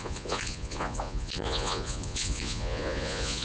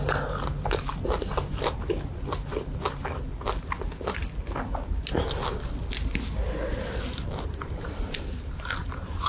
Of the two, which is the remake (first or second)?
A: first